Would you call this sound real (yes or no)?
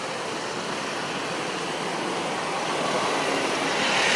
yes